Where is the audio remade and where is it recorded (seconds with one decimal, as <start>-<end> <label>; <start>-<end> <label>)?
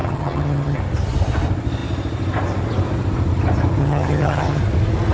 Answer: 0.0-0.8 remade; 0.8-3.8 recorded; 3.8-4.6 remade; 4.6-5.1 recorded